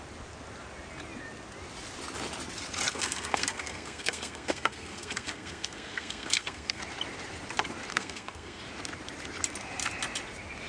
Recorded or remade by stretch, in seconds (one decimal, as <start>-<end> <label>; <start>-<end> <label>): 0.0-2.9 recorded; 2.9-6.8 remade; 6.8-7.9 recorded; 7.9-8.6 remade; 8.6-10.7 recorded